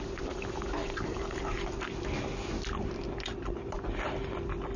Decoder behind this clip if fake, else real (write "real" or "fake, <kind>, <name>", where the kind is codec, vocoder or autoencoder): real